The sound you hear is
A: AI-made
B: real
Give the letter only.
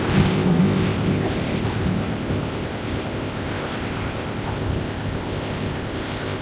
A